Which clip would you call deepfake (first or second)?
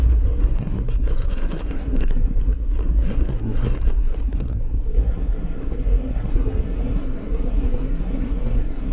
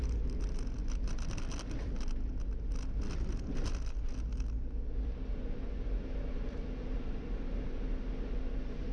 first